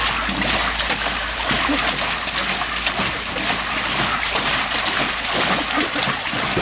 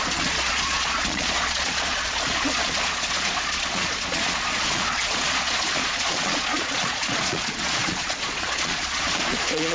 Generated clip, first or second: second